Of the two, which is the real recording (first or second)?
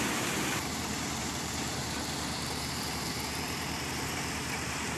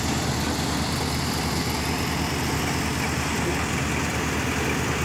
second